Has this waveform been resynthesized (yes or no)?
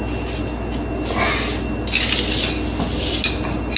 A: no